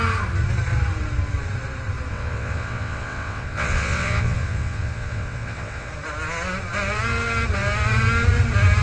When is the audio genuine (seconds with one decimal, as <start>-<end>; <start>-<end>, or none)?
0.0-2.1; 5.9-8.8